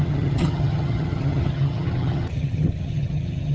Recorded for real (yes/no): no